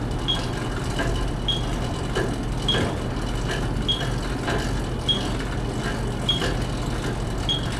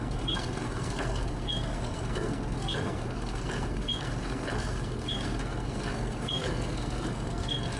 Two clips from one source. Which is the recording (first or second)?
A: first